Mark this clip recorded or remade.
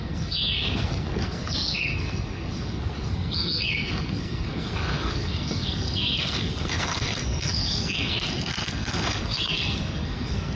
remade